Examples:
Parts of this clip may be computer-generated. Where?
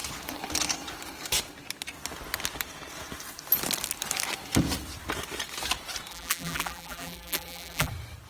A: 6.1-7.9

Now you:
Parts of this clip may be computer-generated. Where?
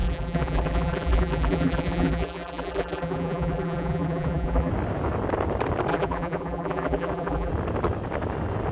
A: 0.0-4.7; 5.9-7.5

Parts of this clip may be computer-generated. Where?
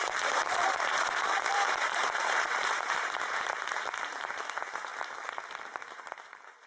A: 0.0-4.9; 5.9-6.7